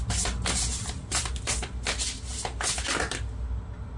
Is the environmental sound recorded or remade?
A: recorded